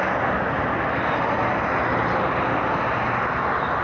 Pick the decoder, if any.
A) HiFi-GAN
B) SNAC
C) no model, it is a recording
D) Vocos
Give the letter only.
C